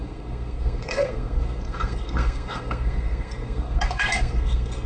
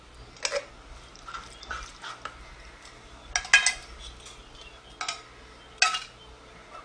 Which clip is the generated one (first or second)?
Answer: first